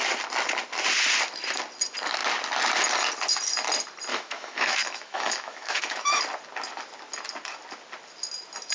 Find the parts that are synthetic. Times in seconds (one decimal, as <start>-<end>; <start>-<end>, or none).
4.1-6.2